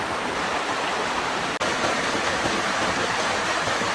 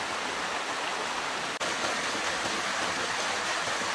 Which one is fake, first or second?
first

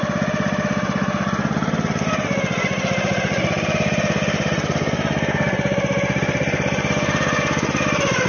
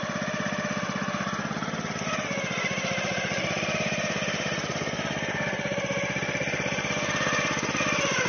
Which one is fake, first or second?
second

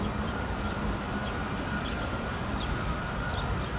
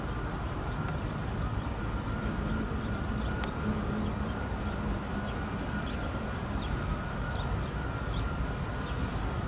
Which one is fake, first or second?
first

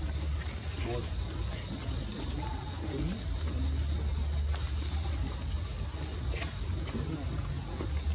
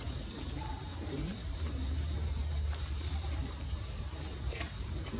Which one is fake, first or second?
second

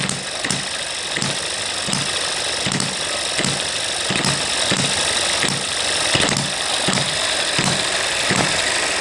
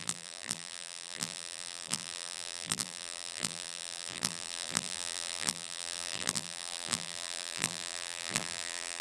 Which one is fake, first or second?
second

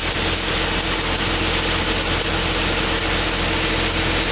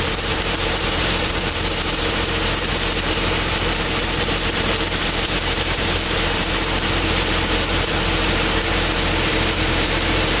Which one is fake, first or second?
second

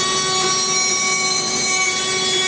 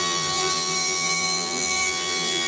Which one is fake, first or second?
second